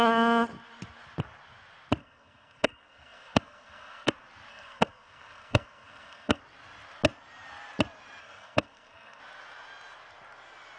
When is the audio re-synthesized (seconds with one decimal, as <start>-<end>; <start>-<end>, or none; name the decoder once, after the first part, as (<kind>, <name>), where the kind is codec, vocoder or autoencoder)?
2.0-4.1 (codec, SNAC); 4.5-6.4; 8.2-9.2